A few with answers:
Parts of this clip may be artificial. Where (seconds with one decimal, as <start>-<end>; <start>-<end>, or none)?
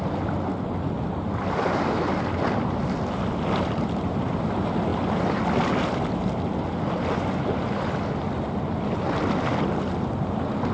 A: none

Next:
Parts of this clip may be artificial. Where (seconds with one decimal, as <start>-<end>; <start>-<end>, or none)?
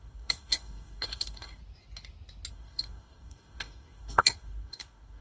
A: 0.0-1.6; 2.5-5.2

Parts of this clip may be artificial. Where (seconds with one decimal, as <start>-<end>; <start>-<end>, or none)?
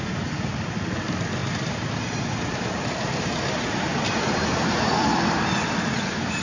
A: 1.4-5.0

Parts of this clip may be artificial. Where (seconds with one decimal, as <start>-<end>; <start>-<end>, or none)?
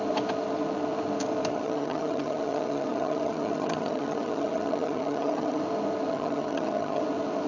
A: 1.5-5.6; 6.1-7.0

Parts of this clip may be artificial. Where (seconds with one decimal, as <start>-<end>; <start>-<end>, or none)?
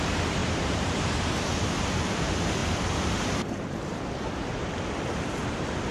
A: 0.4-1.5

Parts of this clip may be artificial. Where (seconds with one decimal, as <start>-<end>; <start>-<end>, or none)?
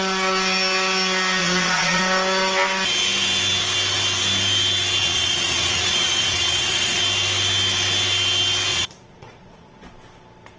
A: 1.4-2.0; 5.0-7.0; 8.7-9.9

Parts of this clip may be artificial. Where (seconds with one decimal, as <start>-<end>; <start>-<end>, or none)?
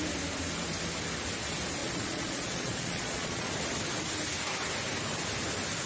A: 1.8-3.5